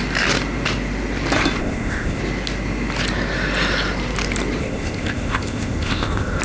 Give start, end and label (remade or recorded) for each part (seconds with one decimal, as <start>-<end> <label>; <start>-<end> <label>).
0.0-1.6 recorded; 1.6-2.2 remade; 2.2-4.6 recorded; 4.6-6.4 remade